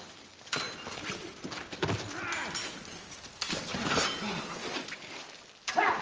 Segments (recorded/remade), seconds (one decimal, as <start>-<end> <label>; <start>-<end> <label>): 0.0-6.0 recorded